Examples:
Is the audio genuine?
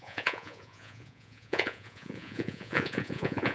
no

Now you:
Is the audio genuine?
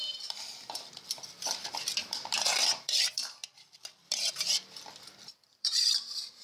no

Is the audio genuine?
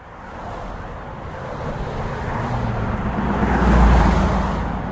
yes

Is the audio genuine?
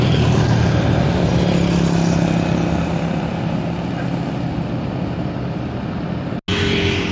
yes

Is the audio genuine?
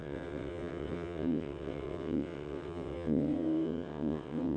no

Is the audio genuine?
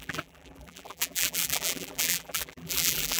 no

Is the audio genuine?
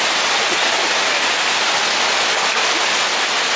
yes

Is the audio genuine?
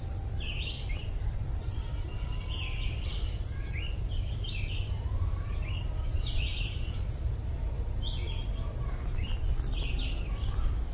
yes